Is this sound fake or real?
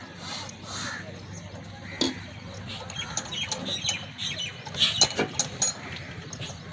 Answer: real